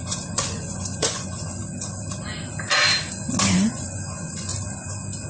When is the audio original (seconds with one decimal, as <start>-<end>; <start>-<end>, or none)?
1.6-3.7; 4.5-5.3